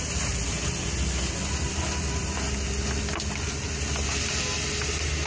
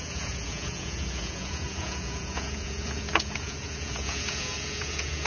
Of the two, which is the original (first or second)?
first